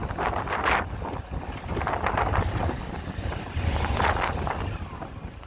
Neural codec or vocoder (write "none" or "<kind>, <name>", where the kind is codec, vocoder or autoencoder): none